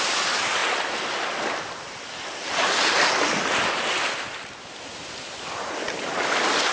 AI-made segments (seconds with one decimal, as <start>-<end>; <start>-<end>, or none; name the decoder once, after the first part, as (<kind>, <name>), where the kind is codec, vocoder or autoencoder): none